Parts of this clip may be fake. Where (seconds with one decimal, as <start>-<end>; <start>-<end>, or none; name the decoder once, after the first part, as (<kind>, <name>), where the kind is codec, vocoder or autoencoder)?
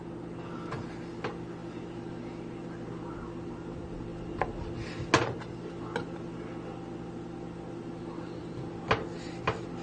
none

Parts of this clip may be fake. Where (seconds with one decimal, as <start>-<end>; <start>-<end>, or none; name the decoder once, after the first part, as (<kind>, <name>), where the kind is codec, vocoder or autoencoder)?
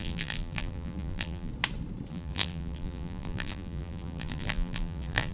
0.0-1.5 (vocoder, BigVGAN v2); 2.1-5.3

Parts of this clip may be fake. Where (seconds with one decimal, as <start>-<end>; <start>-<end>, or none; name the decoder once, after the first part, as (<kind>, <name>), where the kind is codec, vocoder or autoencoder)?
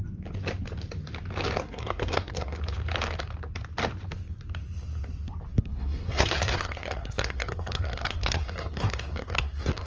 1.6-2.6 (codec, SNAC); 5.5-9.9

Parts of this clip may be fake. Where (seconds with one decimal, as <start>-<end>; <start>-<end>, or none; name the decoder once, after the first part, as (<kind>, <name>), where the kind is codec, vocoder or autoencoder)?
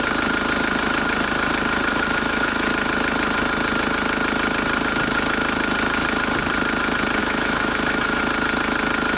1.9-2.7 (autoencoder, DAC-VAE); 7.2-8.2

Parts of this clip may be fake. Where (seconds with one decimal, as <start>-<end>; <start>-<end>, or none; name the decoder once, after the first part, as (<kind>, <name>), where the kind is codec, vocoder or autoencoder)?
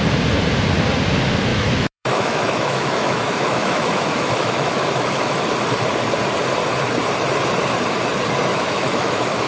1.5-5.4 (autoencoder, DAC-VAE); 8.5-9.5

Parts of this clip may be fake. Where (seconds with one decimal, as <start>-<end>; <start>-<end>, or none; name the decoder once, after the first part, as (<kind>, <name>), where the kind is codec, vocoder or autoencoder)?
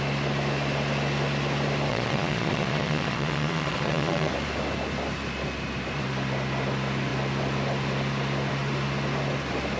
1.9-4.3 (vocoder, Vocos)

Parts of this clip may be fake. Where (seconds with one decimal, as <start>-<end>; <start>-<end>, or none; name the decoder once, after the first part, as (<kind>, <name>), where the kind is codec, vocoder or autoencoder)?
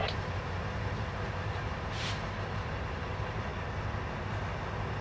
0.0-3.5 (vocoder, BigVGAN v2)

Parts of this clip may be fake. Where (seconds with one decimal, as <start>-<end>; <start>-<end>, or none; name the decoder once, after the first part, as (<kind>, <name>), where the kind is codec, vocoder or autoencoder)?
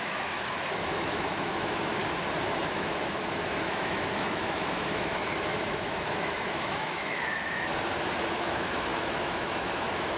0.0-2.0 (autoencoder, DAC-VAE); 2.6-7.7; 8.3-10.2